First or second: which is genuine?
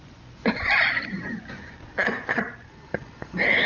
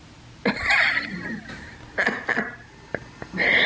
second